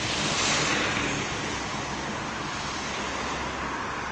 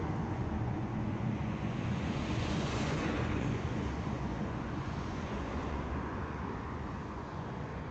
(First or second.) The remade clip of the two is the second